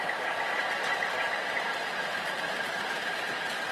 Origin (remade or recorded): recorded